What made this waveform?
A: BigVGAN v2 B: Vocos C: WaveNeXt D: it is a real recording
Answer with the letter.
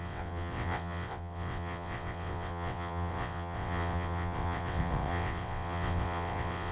C